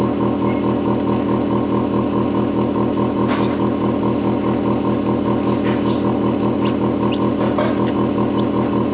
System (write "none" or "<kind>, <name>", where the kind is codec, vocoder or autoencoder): none